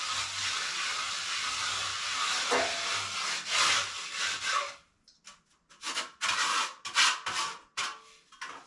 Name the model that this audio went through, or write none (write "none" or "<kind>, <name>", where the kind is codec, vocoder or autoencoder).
none